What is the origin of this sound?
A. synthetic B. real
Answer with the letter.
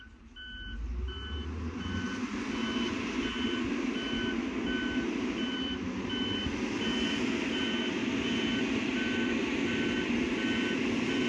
B